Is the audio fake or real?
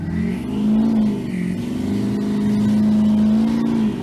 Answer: real